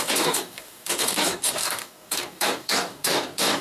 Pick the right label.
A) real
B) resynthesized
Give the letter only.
B